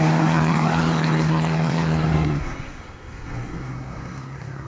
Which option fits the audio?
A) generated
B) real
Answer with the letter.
A